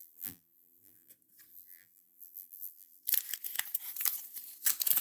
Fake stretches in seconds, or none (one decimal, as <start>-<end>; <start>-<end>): 0.0-1.1; 1.5-3.0